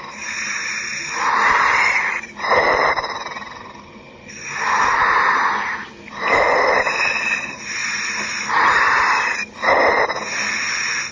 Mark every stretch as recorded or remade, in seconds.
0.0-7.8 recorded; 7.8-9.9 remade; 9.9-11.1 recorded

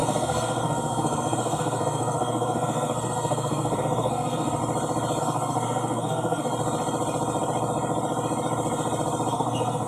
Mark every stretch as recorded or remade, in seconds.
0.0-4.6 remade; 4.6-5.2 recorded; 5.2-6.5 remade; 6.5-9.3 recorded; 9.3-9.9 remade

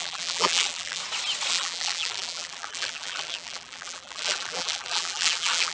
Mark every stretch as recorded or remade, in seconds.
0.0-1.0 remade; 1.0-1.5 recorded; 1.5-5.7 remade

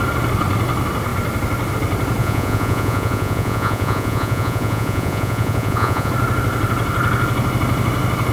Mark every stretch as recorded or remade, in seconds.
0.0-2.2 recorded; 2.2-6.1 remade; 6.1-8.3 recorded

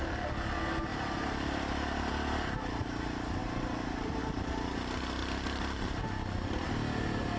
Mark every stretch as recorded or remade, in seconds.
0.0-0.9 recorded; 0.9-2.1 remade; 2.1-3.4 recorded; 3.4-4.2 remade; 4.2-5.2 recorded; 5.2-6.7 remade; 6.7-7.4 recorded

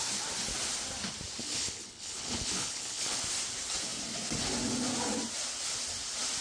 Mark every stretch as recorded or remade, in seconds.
0.0-1.4 recorded; 1.4-3.2 remade; 3.2-6.4 recorded

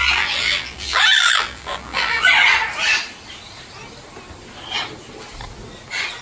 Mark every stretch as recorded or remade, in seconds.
0.0-2.3 remade; 2.3-6.2 recorded

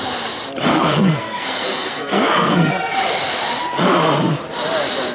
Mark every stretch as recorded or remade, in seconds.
0.0-0.7 recorded; 0.7-2.7 remade; 2.7-5.1 recorded